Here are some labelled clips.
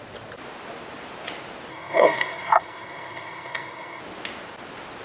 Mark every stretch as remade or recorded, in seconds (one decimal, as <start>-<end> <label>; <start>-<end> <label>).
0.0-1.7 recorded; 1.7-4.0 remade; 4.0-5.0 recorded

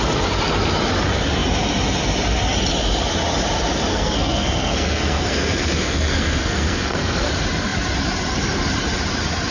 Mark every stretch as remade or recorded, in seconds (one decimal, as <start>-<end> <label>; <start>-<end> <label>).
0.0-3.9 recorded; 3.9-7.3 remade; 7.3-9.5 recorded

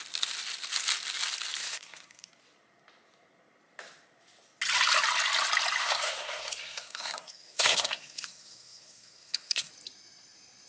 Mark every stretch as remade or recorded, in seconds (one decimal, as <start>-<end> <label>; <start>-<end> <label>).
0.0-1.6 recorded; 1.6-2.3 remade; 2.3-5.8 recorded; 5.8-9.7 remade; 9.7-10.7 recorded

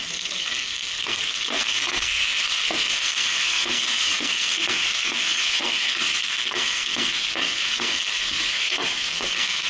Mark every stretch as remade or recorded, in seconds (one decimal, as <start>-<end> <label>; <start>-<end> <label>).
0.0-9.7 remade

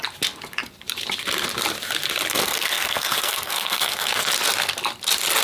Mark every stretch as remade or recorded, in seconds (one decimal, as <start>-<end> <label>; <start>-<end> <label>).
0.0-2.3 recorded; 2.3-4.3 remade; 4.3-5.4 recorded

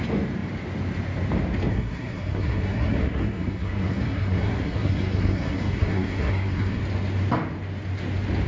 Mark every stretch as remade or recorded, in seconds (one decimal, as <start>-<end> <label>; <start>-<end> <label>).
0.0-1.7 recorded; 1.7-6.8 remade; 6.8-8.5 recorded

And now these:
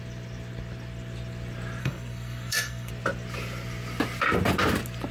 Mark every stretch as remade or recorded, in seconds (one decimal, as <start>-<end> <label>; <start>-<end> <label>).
0.0-1.8 recorded; 1.8-2.9 remade; 2.9-5.1 recorded